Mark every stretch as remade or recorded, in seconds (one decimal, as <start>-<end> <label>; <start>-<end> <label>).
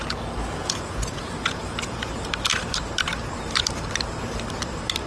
0.0-0.6 recorded; 0.6-2.1 remade; 2.1-5.1 recorded